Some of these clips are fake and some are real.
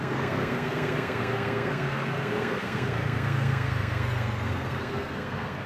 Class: fake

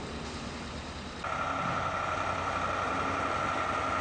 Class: real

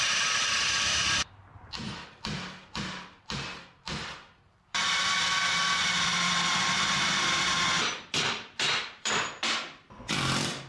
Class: fake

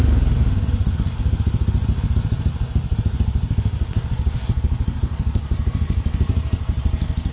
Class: real